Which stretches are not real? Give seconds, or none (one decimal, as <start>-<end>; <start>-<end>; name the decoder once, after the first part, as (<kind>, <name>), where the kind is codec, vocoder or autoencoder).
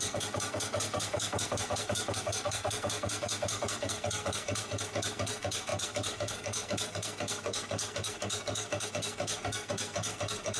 0.0-10.6 (codec, SNAC)